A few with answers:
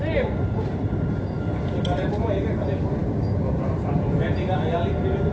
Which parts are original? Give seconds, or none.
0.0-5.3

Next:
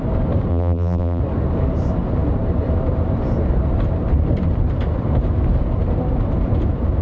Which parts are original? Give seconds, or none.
0.0-0.5; 1.2-7.0

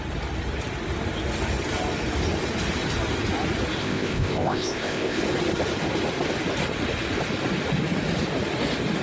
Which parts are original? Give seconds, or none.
0.0-3.8; 5.2-9.0

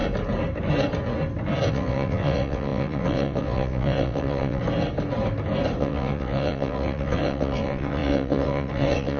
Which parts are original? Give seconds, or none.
0.0-1.7; 4.6-5.8

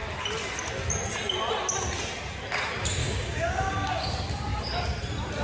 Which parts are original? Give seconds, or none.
0.0-3.0; 4.1-5.4

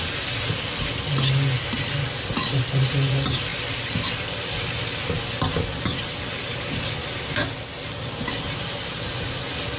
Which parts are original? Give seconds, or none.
0.0-3.5; 4.1-7.0; 7.9-9.8

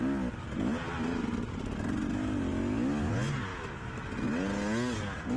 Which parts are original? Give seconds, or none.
0.0-3.5; 4.1-5.4

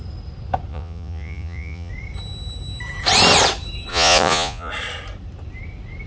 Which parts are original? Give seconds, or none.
0.0-0.7; 1.9-3.9; 4.7-6.1